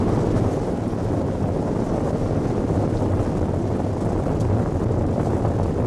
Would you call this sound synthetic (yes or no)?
no